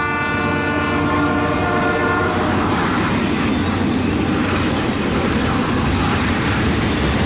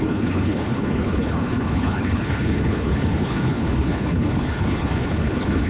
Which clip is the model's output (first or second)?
second